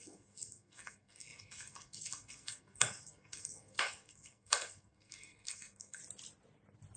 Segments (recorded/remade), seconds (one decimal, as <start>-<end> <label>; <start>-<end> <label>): 0.0-6.0 remade; 6.0-7.0 recorded